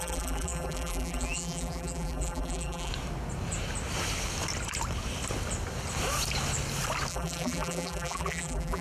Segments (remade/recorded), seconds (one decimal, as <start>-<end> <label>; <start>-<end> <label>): 0.0-2.9 remade; 2.9-7.1 recorded; 7.1-8.8 remade